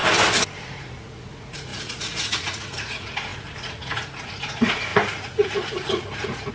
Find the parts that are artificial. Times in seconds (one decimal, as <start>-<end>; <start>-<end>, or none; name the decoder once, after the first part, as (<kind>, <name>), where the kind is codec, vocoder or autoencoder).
0.6-6.5 (vocoder, Vocos)